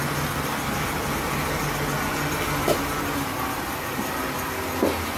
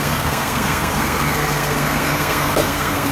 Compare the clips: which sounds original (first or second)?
first